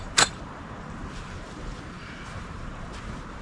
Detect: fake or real fake